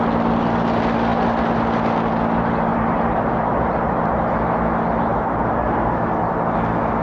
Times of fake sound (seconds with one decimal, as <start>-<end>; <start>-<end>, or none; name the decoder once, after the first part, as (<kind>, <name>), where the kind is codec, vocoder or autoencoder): 2.7-4.4 (vocoder, BigVGAN v2); 5.1-6.1